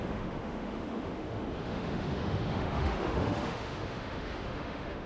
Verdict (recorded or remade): remade